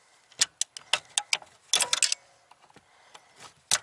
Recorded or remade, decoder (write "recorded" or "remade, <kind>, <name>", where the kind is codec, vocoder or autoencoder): recorded